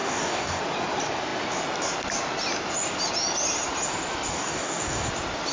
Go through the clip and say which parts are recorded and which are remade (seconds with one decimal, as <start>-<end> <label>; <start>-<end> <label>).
0.0-0.6 remade; 0.6-4.3 recorded; 4.3-5.1 remade; 5.1-5.5 recorded